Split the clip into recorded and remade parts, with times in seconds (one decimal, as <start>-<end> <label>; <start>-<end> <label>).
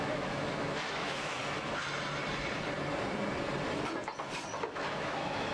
0.0-1.4 remade; 1.4-4.6 recorded; 4.6-5.5 remade